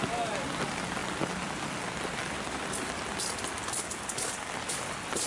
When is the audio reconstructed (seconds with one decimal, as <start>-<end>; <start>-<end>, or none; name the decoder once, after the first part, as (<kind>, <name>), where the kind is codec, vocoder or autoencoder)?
none